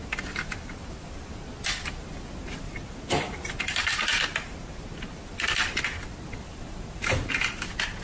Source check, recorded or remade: recorded